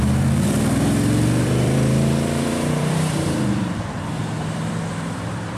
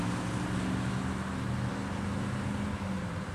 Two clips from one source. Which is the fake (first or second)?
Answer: first